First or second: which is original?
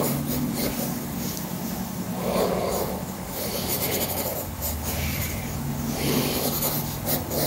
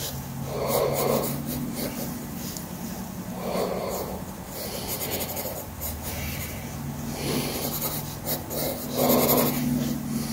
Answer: second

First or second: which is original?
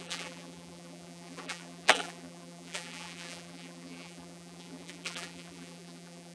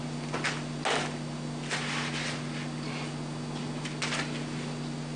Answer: second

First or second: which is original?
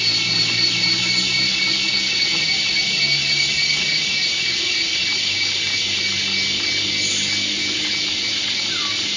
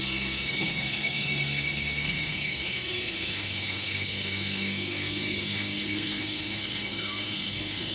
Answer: first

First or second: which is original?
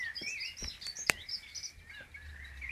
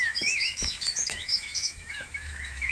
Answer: first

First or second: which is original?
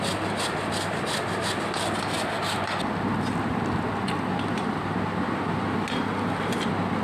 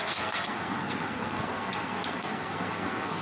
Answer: first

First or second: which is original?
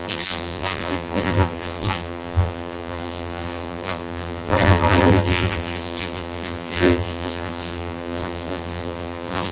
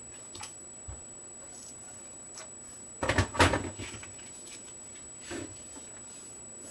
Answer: second